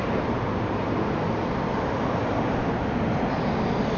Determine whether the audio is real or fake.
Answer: real